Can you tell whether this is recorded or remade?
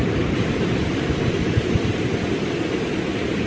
recorded